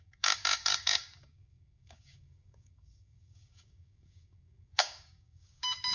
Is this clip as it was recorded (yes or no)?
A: no